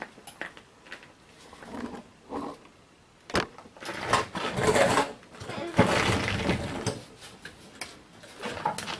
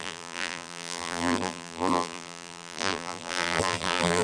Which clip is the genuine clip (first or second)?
first